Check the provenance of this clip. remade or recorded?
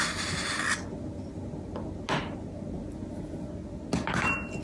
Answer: recorded